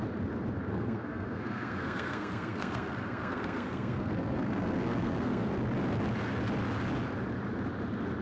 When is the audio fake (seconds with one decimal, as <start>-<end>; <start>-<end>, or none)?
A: 0.7-5.5